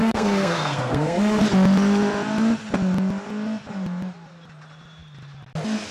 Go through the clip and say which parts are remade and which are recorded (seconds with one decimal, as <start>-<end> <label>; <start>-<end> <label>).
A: 0.0-1.4 remade; 1.4-5.9 recorded